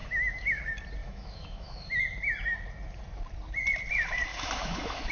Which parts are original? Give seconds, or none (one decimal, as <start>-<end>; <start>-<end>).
0.6-1.0; 2.0-4.3